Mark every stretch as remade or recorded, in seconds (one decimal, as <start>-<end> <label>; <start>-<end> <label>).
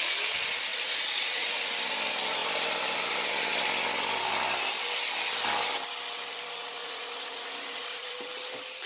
0.0-0.7 recorded; 0.7-1.6 remade; 1.6-6.8 recorded; 6.8-8.1 remade; 8.1-8.9 recorded